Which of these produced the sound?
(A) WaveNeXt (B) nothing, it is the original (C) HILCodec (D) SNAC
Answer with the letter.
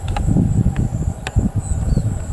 B